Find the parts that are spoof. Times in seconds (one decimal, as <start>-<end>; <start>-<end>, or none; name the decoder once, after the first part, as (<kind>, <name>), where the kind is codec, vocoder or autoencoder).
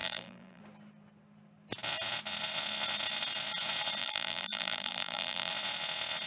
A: 0.0-0.6 (vocoder, BigVGAN v2); 4.0-5.5